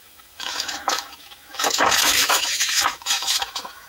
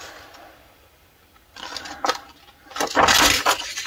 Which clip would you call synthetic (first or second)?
first